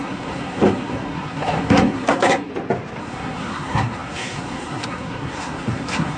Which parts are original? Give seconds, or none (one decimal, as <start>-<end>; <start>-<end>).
2.5-3.0